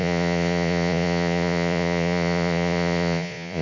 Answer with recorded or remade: remade